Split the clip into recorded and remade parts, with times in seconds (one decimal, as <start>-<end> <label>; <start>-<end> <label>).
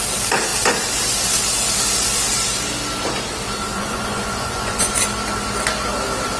0.0-3.7 recorded; 3.7-4.9 remade; 4.9-6.4 recorded